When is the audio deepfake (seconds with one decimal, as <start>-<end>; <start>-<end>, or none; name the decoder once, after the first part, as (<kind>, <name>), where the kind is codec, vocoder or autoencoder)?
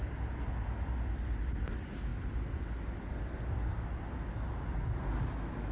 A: none